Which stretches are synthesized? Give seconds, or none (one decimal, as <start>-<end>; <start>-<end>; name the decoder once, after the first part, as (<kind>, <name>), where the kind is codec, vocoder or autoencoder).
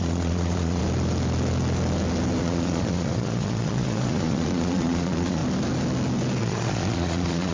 0.0-0.8 (vocoder, Vocos); 2.4-5.4; 6.4-7.5